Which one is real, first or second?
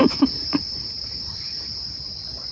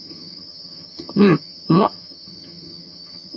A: first